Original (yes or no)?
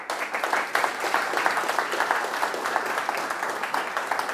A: yes